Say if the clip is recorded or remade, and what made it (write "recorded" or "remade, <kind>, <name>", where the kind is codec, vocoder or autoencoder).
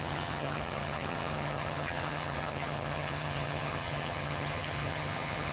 remade, vocoder, HiFi-GAN